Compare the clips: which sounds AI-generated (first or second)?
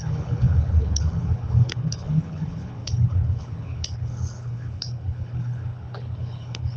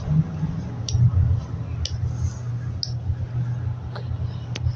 first